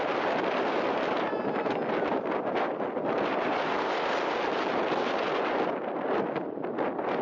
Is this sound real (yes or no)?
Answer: yes